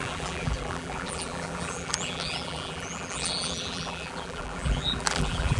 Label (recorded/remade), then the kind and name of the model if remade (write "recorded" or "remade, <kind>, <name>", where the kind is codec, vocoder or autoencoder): remade, vocoder, BigVGAN v2